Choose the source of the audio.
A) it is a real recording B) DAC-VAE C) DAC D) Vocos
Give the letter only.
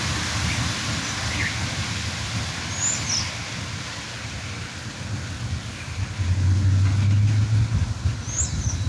A